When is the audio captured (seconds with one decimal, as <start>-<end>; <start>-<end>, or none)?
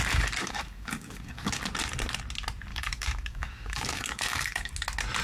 0.0-0.4; 1.6-2.7; 4.7-5.2